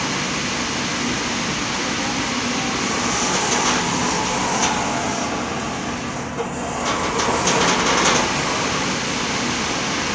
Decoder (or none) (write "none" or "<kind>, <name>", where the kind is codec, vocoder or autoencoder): none